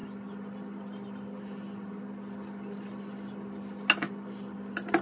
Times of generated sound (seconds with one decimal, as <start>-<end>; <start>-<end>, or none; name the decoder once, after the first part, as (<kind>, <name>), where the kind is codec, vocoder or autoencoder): none